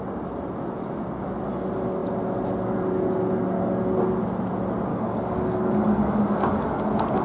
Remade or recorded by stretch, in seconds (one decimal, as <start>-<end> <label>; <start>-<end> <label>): 0.0-4.9 recorded; 4.9-6.7 remade; 6.7-7.2 recorded